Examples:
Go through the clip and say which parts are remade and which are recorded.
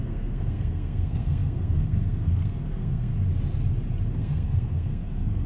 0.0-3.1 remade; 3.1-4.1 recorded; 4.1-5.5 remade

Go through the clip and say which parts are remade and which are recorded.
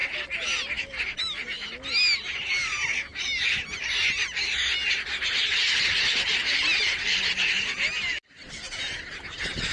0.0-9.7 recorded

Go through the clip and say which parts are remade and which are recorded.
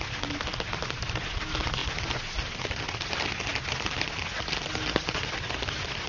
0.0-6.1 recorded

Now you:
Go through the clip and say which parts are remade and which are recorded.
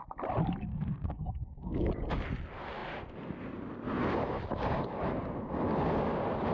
0.0-0.7 recorded; 0.7-1.9 remade; 1.9-6.5 recorded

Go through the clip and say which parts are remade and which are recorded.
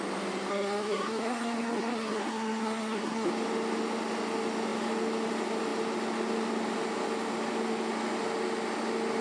0.0-0.5 recorded; 0.5-3.3 remade; 3.3-9.2 recorded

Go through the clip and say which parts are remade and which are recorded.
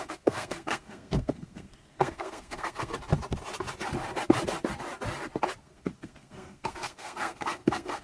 0.0-2.9 remade; 2.9-5.6 recorded; 5.6-8.0 remade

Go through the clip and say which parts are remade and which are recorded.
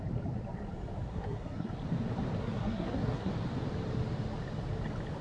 0.0-1.1 recorded; 1.1-1.7 remade; 1.7-2.4 recorded; 2.4-3.3 remade; 3.3-5.2 recorded